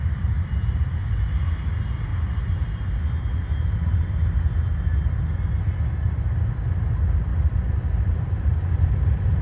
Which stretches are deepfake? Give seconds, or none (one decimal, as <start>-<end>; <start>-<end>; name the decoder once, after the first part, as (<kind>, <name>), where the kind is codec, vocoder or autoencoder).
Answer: none